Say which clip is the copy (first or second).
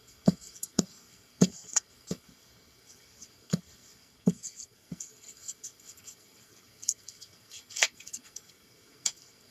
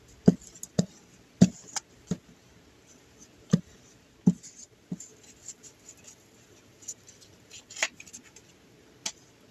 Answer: first